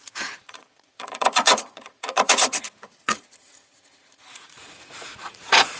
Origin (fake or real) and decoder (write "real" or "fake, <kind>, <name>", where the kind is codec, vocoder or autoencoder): fake, vocoder, Vocos